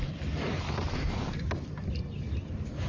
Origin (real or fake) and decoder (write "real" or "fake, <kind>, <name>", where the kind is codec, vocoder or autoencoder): real